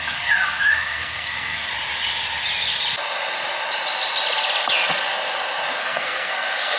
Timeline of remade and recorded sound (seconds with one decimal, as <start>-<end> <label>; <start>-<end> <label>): 0.0-1.7 remade; 1.7-5.8 recorded; 5.8-6.8 remade